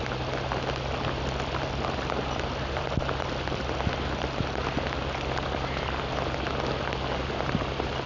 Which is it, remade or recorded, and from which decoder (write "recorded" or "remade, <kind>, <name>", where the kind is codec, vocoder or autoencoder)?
recorded